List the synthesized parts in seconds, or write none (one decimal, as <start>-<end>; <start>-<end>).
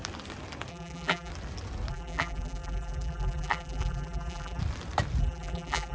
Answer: 0.7-1.3; 1.9-4.6; 5.2-5.9